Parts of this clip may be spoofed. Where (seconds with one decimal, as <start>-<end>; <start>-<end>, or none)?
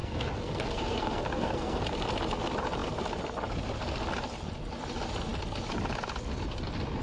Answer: 0.0-1.8